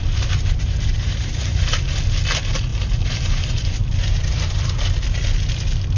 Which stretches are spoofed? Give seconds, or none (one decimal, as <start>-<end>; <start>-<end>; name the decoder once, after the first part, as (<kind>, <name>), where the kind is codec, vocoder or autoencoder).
0.0-2.0 (vocoder, BigVGAN v2); 2.7-4.6